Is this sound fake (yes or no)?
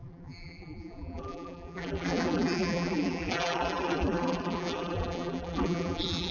yes